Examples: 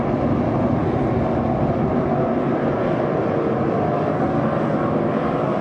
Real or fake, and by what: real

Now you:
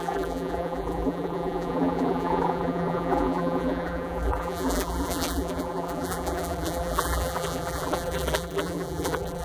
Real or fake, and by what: fake, vocoder, BigVGAN v2